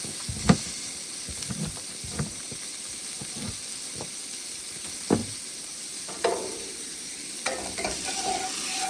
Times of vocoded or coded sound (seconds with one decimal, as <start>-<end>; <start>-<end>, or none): 5.2-7.3